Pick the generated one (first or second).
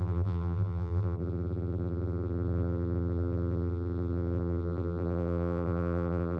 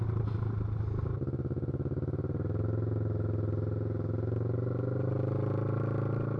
first